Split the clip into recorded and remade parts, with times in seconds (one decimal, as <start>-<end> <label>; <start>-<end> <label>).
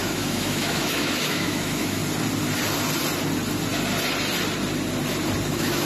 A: 0.0-2.0 remade; 2.0-5.5 recorded; 5.5-5.9 remade